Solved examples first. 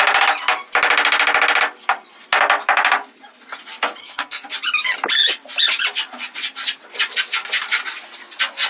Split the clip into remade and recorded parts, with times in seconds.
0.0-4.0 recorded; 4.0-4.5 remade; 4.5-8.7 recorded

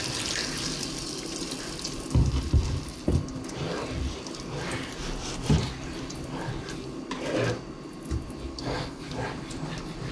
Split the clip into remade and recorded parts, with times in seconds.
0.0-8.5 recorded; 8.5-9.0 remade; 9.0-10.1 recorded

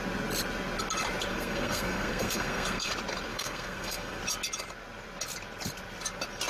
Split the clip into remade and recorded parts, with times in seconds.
0.0-1.3 recorded; 1.3-2.9 remade; 2.9-3.3 recorded; 3.3-4.2 remade; 4.2-6.5 recorded

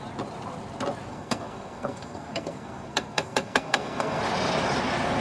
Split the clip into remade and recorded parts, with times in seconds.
0.0-1.1 recorded; 1.1-4.2 remade; 4.2-5.2 recorded

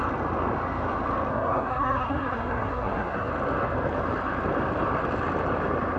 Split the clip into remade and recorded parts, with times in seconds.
0.0-1.3 recorded; 1.3-3.3 remade; 3.3-6.0 recorded

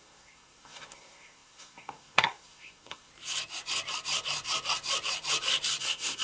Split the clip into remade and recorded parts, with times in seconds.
0.0-3.1 remade; 3.1-5.8 recorded; 5.8-6.2 remade

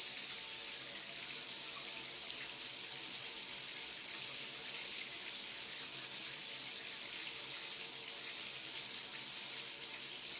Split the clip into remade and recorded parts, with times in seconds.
0.0-10.4 recorded